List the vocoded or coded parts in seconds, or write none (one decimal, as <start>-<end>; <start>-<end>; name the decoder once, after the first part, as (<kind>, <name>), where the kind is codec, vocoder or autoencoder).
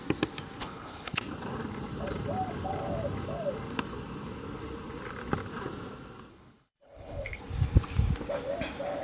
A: 0.6-1.2 (codec, HILCodec); 6.3-7.4